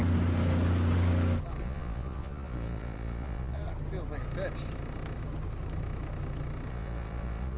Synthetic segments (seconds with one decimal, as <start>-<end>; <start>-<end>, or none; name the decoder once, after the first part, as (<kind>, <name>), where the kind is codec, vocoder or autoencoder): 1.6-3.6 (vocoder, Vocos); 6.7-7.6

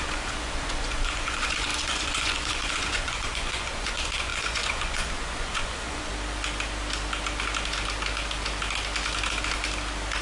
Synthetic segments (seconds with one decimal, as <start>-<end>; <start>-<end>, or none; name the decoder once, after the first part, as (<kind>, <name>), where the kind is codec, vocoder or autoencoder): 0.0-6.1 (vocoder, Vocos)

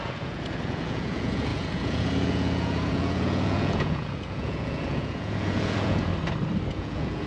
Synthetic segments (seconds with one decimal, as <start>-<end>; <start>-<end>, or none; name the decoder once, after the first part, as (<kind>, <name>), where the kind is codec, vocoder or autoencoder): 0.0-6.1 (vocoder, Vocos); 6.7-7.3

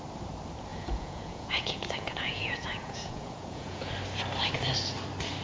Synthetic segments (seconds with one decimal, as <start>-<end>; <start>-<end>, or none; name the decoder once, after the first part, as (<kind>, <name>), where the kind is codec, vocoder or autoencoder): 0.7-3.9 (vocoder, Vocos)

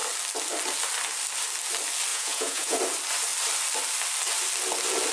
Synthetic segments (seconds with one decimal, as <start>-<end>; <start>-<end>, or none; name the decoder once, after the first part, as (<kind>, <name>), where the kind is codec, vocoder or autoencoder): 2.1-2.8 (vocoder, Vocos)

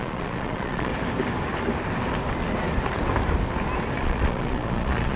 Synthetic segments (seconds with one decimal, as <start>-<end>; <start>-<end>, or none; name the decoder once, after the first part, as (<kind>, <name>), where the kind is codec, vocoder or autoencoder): 0.0-0.9 (vocoder, Vocos); 4.0-5.2

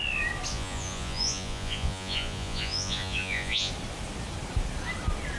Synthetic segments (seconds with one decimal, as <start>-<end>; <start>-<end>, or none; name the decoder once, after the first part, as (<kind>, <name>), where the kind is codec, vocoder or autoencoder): 0.5-3.7 (vocoder, Vocos)